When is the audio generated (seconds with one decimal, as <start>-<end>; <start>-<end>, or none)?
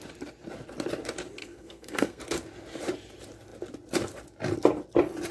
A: 1.4-2.2